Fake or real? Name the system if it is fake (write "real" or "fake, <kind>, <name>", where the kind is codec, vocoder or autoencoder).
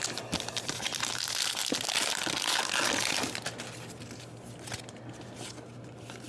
real